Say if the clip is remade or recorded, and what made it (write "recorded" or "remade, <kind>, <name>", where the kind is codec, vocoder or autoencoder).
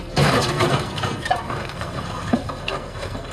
remade, codec, SNAC